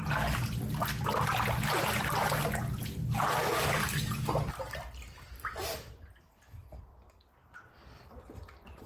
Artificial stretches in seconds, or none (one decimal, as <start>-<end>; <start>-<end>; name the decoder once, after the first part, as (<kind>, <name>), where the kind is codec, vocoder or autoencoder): 3.4-4.3 (codec, DAC)